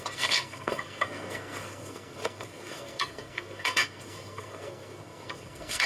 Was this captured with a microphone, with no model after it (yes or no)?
no